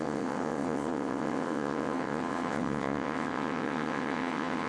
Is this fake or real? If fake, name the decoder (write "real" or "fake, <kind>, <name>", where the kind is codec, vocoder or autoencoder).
fake, vocoder, WaveNeXt